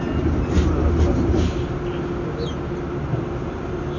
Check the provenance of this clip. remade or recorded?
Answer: recorded